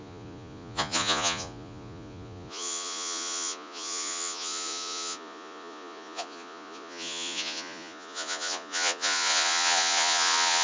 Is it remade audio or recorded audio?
remade